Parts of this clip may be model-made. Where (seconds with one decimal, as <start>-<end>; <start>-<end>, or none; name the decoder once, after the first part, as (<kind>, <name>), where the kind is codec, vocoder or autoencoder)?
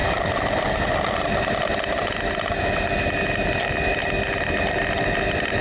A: none